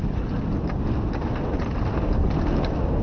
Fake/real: real